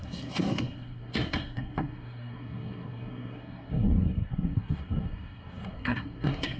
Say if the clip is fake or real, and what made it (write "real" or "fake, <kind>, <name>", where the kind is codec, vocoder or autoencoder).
fake, codec, SNAC